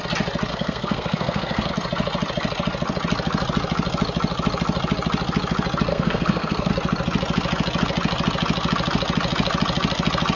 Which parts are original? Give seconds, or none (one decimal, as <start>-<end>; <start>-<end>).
0.0-0.5; 1.7-5.9; 6.7-10.4